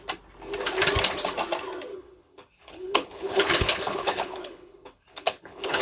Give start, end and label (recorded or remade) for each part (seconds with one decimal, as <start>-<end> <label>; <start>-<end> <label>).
0.0-1.9 recorded; 1.9-5.8 remade